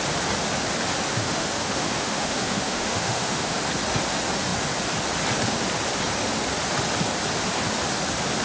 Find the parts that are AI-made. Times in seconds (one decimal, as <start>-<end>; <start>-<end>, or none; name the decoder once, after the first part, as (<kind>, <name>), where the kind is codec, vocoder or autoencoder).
1.1-3.6 (autoencoder, DAC-VAE)